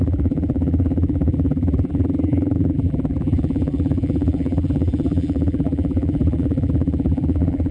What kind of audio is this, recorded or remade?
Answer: remade